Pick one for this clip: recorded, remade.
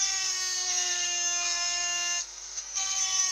remade